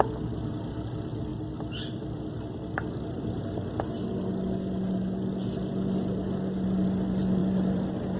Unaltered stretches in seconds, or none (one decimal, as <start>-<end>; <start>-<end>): 0.0-1.3; 2.3-7.4